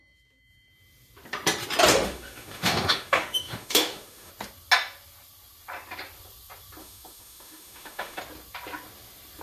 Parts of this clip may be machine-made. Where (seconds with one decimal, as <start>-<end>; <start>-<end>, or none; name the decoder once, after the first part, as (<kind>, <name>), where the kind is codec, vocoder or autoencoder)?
1.9-4.3 (autoencoder, DAC-VAE); 6.8-8.2